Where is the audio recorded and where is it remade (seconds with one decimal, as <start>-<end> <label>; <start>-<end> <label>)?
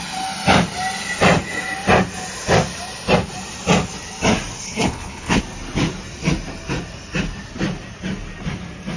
0.0-4.6 recorded; 4.6-5.4 remade; 5.4-9.0 recorded